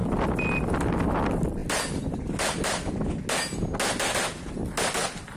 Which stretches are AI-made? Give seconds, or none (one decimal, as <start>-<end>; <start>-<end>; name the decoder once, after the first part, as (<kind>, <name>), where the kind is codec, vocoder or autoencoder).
1.6-2.9 (vocoder, BigVGAN v2)